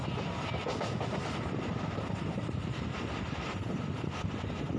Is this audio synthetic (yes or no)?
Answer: no